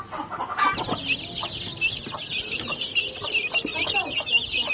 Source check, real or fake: real